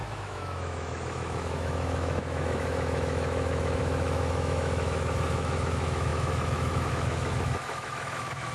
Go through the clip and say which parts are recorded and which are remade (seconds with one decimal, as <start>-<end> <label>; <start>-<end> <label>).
0.0-8.5 remade